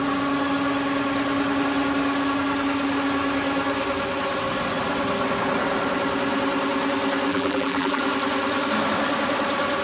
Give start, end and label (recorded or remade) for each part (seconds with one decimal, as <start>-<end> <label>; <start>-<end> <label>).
0.0-7.3 recorded; 7.3-8.0 remade; 8.0-9.8 recorded